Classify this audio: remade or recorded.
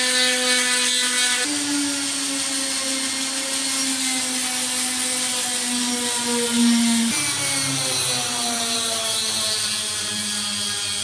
recorded